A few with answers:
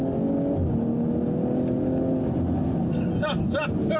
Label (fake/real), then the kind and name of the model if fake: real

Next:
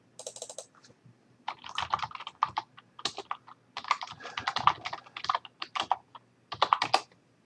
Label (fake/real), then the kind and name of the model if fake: real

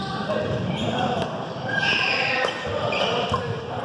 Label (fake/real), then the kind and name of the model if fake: fake, vocoder, BigVGAN v2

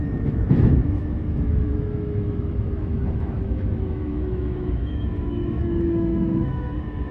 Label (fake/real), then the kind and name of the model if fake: fake, autoencoder, DAC-VAE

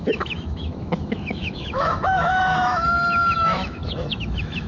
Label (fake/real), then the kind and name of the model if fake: fake, autoencoder, DAC-VAE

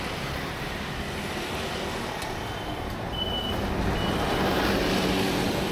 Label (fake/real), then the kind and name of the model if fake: real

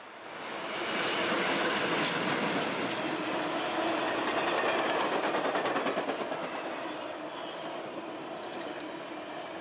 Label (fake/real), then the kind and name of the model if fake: real